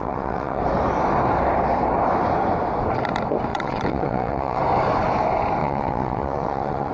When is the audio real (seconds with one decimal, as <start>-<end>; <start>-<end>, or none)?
0.6-3.5; 4.6-5.6